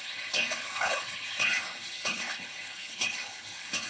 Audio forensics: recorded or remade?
remade